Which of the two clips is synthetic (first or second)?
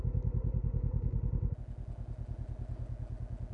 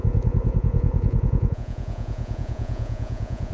second